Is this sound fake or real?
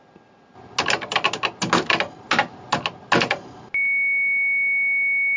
real